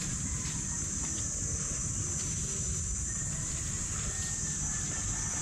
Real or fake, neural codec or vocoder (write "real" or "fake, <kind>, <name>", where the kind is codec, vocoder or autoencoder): real